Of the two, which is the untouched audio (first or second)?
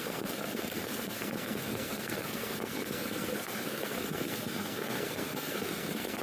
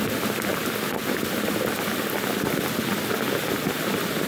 second